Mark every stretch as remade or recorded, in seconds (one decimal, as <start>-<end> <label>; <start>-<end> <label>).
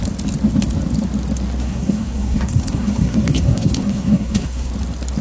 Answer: 0.0-1.6 recorded; 1.6-4.7 remade; 4.7-5.2 recorded